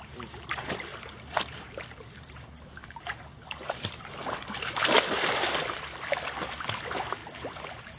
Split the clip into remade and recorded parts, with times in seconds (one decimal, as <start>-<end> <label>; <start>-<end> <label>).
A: 0.0-8.0 recorded